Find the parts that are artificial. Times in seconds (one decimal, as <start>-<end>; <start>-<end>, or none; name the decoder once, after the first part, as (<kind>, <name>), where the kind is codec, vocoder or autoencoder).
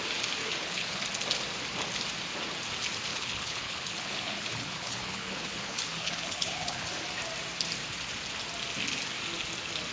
0.4-1.0 (codec, HILCodec); 3.1-6.9